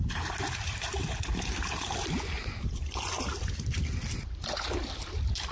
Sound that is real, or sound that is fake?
real